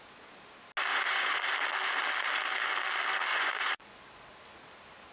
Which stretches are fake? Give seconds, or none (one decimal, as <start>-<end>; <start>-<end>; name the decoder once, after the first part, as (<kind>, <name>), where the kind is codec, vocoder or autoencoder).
0.9-1.4 (vocoder, Vocos); 3.3-4.0